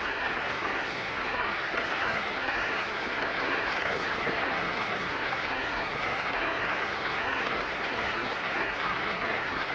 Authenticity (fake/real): fake